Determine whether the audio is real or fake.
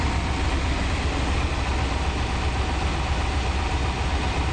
real